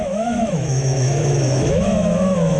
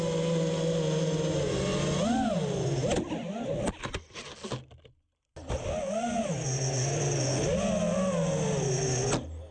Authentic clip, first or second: second